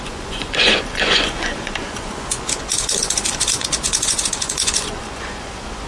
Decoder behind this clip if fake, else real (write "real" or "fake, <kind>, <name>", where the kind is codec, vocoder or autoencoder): fake, vocoder, Vocos